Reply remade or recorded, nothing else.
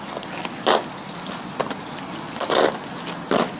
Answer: recorded